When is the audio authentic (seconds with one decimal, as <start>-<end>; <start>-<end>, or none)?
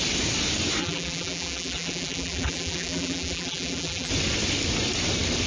0.0-0.8; 4.1-5.5